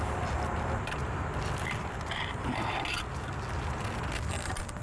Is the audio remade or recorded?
recorded